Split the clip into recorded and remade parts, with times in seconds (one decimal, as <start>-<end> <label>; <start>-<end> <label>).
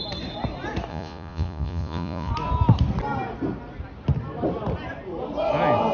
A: 0.0-0.9 recorded; 0.9-2.3 remade; 2.3-5.9 recorded